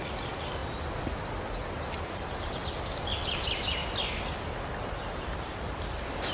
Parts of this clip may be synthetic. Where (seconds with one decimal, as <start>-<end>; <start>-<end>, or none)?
0.0-0.6; 1.2-1.6; 2.2-3.8; 5.3-6.3